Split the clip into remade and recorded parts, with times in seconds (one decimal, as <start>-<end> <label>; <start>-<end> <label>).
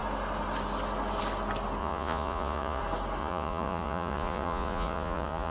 0.0-1.8 recorded; 1.8-2.8 remade; 2.8-3.2 recorded; 3.2-5.5 remade